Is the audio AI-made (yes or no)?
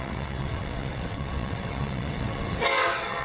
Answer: yes